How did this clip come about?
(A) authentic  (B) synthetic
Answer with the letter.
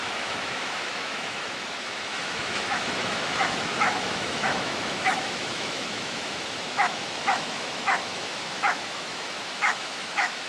B